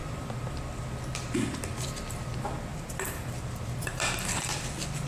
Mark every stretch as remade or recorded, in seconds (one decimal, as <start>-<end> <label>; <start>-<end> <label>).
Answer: 0.0-0.8 remade; 0.8-2.7 recorded; 2.7-4.5 remade; 4.5-5.1 recorded